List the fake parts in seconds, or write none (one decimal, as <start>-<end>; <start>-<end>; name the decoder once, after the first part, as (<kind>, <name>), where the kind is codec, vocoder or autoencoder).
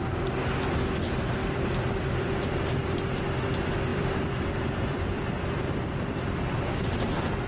1.4-2.8 (vocoder, BigVGAN v2); 3.9-6.8